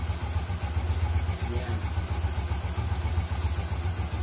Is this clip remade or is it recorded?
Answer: recorded